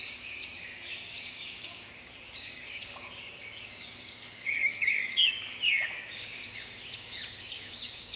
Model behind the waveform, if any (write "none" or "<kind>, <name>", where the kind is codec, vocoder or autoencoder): codec, DAC